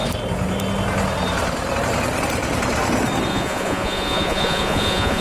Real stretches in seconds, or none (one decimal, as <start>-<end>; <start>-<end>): 0.0-3.3